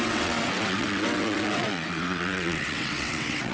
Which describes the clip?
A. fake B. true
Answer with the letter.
A